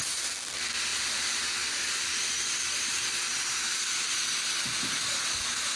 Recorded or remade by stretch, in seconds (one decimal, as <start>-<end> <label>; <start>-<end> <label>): 0.0-0.9 recorded; 0.9-4.4 remade; 4.4-5.8 recorded